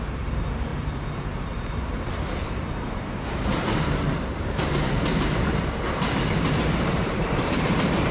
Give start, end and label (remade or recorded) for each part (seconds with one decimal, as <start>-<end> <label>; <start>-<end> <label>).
0.0-8.1 remade